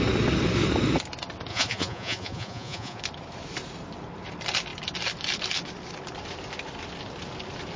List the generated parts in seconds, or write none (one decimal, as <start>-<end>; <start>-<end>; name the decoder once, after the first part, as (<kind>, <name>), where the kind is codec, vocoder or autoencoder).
1.5-3.0 (vocoder, Vocos)